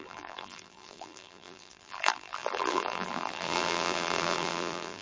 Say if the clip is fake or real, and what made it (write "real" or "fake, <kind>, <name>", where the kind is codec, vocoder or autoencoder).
fake, vocoder, BigVGAN v2